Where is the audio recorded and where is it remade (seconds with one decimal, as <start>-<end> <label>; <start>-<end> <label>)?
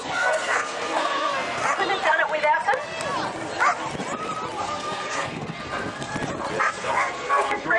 0.0-1.6 remade; 1.6-4.6 recorded; 4.6-6.1 remade; 6.1-6.6 recorded; 6.6-7.8 remade